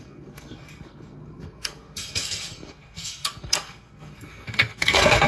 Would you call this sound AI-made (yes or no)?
yes